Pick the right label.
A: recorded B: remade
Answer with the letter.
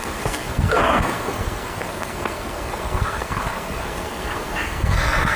B